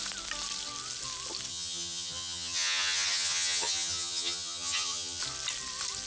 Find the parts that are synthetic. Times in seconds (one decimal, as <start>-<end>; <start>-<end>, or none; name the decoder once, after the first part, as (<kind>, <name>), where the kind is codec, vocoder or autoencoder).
1.5-5.2 (vocoder, HiFi-GAN)